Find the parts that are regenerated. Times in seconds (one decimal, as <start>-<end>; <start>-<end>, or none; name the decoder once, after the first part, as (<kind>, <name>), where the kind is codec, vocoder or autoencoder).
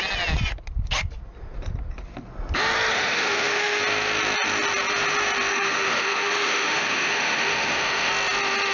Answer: 2.9-3.8 (autoencoder, DAC-VAE); 5.5-8.1